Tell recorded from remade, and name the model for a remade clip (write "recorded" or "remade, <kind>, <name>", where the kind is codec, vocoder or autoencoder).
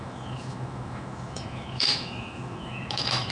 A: remade, autoencoder, DAC-VAE